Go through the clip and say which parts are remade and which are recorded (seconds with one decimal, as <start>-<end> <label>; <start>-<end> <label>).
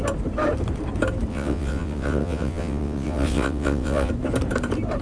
0.0-1.3 recorded; 1.3-4.1 remade; 4.1-5.0 recorded